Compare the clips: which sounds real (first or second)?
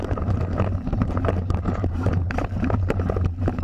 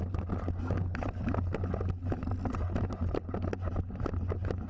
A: second